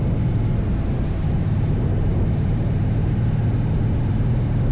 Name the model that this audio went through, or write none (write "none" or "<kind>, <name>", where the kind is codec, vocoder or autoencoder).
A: none